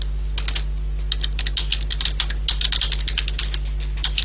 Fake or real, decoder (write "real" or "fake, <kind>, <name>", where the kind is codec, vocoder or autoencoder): real